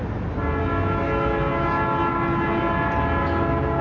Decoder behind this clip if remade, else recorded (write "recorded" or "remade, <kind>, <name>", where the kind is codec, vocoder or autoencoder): recorded